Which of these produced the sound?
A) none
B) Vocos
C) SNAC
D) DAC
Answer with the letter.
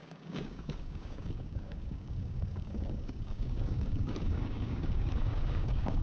D